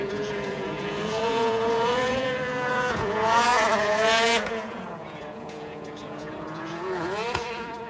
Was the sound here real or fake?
fake